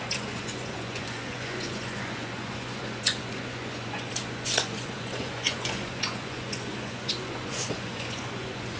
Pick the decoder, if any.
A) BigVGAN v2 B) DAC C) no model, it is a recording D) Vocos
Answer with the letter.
D